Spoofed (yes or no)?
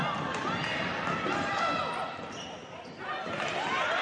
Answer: no